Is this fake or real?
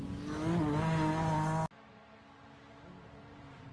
real